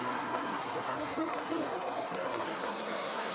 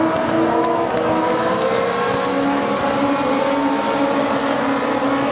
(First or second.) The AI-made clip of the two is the first